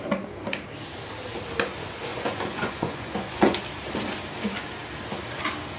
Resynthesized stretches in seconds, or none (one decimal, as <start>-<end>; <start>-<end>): 2.1-3.6